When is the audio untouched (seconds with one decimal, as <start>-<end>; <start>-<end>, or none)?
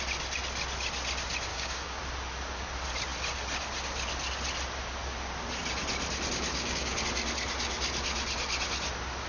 0.0-1.5; 2.0-6.5; 7.0-9.3